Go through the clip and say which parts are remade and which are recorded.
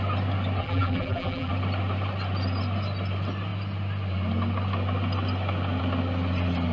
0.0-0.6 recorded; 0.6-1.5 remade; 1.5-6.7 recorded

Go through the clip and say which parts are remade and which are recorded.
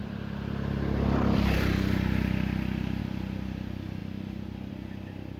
0.0-3.0 remade; 3.0-4.0 recorded; 4.0-4.7 remade; 4.7-5.4 recorded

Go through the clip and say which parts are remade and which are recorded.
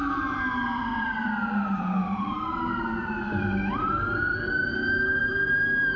0.0-0.9 recorded; 0.9-4.5 remade; 4.5-5.2 recorded; 5.2-6.0 remade